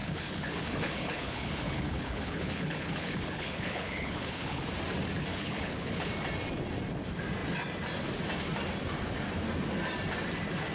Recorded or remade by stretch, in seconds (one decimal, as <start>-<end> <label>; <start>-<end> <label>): 0.0-4.7 remade; 4.7-5.3 recorded; 5.3-6.1 remade; 6.1-10.7 recorded